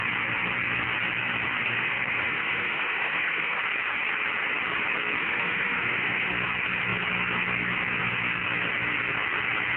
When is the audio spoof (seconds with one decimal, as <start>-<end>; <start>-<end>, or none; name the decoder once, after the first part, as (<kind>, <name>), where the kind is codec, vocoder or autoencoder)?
1.6-3.6 (autoencoder, DAC-VAE); 5.2-6.3